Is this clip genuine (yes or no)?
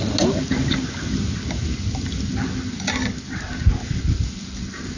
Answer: yes